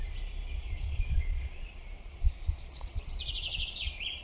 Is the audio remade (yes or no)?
yes